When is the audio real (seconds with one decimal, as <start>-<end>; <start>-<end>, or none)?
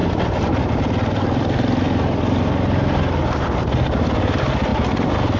0.0-5.4